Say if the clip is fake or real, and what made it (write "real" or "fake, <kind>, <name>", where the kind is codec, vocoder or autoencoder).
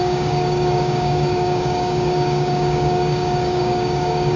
fake, codec, DAC